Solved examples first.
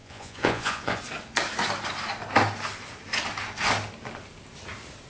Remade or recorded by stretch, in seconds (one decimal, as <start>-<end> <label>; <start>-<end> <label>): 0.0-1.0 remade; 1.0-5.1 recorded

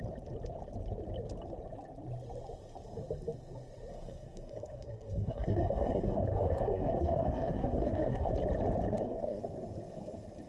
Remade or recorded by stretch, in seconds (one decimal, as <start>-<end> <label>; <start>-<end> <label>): 0.0-3.9 recorded; 3.9-8.3 remade; 8.3-8.9 recorded; 8.9-9.4 remade; 9.4-10.5 recorded

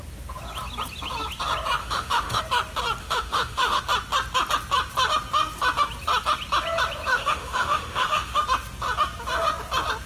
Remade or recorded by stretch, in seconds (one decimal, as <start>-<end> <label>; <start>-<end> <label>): 0.0-1.8 recorded; 1.8-2.4 remade; 2.4-3.0 recorded; 3.0-3.8 remade; 3.8-7.1 recorded; 7.1-8.4 remade; 8.4-10.1 recorded

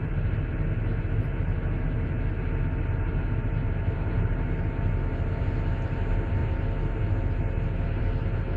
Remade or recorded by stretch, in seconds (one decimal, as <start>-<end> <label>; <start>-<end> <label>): 0.0-8.6 recorded

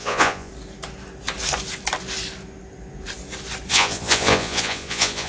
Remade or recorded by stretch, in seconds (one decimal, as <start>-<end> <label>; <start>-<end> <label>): 0.0-0.5 remade; 0.5-3.7 recorded; 3.7-5.3 remade